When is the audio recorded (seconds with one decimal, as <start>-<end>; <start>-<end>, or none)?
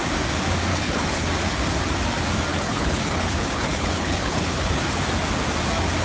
0.0-0.7; 1.3-2.5; 4.8-6.0